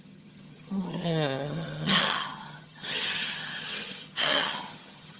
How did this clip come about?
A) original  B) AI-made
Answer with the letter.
B